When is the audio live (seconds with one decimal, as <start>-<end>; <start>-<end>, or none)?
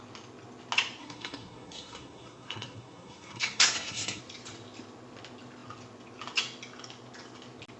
0.0-1.0; 4.2-7.8